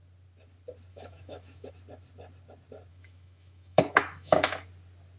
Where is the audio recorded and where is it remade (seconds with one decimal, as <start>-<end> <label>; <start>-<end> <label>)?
0.0-0.9 recorded; 0.9-1.7 remade; 1.7-2.9 recorded; 2.9-4.5 remade; 4.5-5.2 recorded